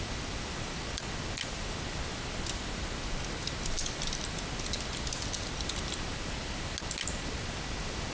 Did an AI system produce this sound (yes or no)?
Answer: no